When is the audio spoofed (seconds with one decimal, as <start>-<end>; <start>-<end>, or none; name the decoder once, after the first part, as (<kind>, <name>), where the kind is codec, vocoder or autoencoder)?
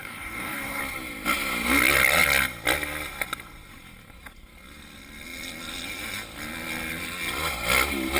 0.0-0.8 (codec, DAC)